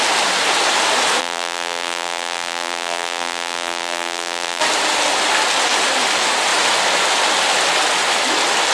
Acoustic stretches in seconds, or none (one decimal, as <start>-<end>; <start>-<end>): 0.0-1.2; 4.6-8.7